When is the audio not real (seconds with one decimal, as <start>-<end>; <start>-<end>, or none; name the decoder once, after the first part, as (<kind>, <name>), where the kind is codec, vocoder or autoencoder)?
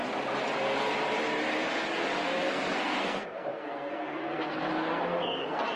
2.5-5.8 (codec, SNAC)